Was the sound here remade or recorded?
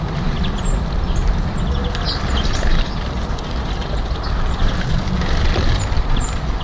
recorded